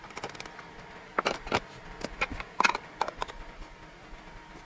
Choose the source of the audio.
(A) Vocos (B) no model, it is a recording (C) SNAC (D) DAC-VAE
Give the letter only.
B